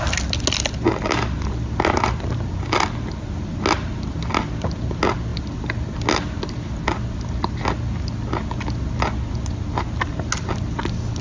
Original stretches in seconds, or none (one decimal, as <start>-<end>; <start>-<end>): 0.0-11.2